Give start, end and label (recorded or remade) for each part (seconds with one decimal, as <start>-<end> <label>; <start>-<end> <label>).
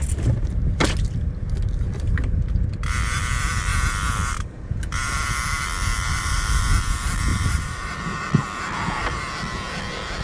0.0-6.1 recorded; 6.1-6.6 remade; 6.6-7.3 recorded; 7.3-8.0 remade; 8.0-10.2 recorded